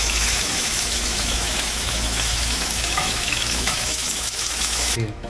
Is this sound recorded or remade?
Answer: remade